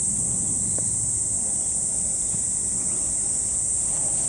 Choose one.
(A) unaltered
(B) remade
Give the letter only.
A